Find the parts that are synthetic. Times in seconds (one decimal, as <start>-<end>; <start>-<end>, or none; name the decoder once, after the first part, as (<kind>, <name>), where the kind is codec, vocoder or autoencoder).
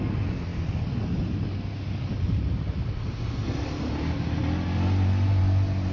none